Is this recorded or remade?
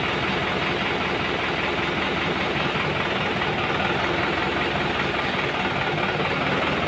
recorded